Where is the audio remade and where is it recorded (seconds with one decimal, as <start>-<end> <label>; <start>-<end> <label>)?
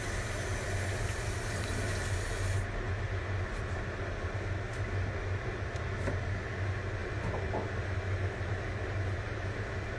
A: 0.0-10.0 recorded